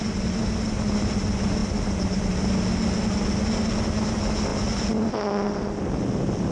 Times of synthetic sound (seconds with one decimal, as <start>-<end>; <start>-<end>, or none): none